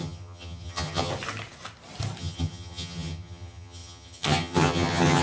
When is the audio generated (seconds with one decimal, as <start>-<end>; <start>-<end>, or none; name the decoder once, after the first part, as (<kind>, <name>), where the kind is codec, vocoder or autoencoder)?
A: 0.0-1.1 (vocoder, HiFi-GAN); 2.2-5.2